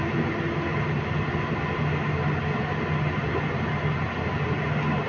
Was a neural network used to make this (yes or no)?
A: no